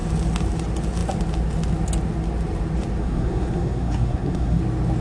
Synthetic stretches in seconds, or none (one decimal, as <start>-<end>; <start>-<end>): 3.0-4.6